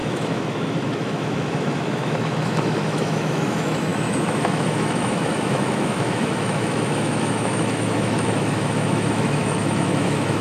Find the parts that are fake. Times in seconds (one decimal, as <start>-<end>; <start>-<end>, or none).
0.0-10.4